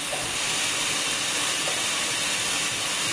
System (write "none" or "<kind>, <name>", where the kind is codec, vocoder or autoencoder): none